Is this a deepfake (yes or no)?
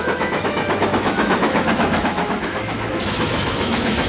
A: yes